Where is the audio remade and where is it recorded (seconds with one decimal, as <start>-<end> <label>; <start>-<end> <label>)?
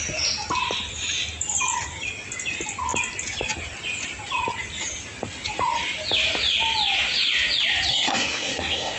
0.0-7.9 recorded; 7.9-9.0 remade